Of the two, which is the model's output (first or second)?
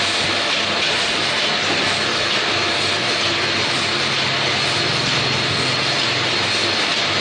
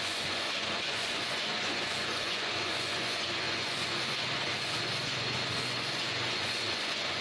second